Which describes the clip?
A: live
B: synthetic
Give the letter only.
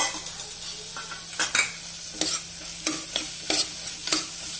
A